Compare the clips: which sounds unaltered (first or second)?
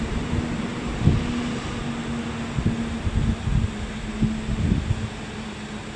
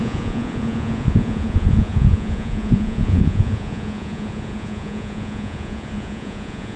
first